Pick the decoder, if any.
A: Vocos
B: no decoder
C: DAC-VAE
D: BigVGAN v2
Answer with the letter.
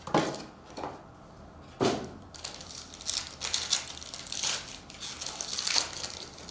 B